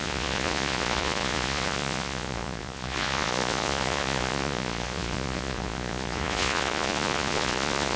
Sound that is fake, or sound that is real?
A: fake